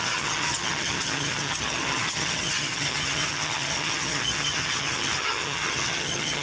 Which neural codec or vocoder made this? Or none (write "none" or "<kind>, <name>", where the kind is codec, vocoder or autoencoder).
vocoder, HiFi-GAN